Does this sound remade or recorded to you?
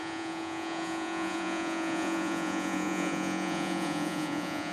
remade